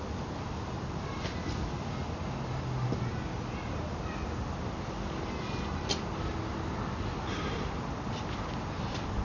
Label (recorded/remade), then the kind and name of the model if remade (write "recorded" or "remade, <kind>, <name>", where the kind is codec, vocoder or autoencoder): recorded